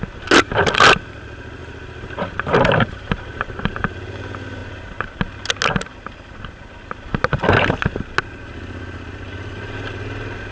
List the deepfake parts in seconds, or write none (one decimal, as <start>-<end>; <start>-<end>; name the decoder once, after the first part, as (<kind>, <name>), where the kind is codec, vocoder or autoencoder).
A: 1.6-3.9 (vocoder, BigVGAN v2); 8.4-10.5